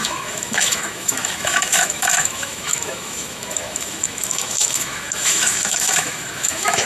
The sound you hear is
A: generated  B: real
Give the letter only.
A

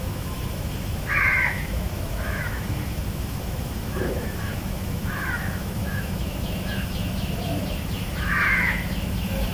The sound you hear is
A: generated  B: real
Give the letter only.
A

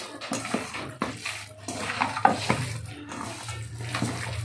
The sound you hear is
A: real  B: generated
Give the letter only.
A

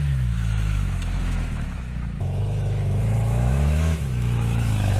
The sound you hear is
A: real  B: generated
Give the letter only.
B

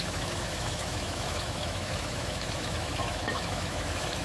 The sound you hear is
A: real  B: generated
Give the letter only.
B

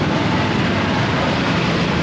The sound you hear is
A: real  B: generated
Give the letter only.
A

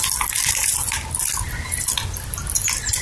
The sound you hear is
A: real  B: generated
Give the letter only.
A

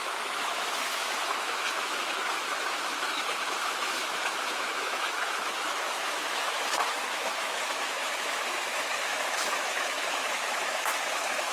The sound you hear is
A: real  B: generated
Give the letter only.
B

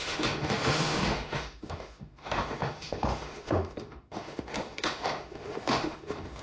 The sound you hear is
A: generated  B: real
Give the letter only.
A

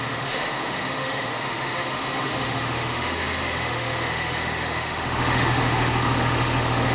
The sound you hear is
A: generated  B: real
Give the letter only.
A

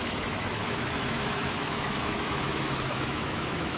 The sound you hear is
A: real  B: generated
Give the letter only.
B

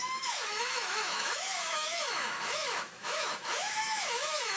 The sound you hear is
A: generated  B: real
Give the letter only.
A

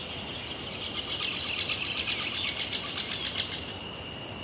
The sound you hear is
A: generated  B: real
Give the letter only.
B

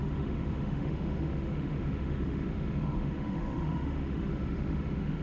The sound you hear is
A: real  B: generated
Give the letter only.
B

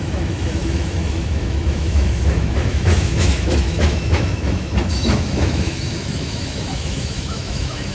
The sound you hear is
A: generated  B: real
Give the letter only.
A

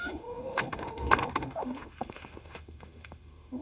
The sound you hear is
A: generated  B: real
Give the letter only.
A